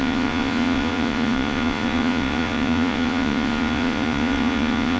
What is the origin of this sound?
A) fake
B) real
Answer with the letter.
A